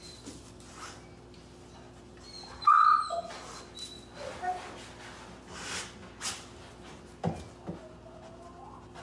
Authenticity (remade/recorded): recorded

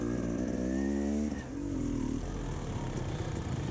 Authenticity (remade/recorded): recorded